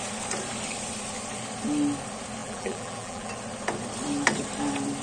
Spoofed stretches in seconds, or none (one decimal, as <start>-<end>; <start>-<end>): 2.4-3.3